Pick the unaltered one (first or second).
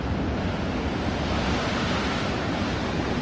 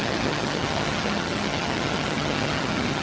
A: first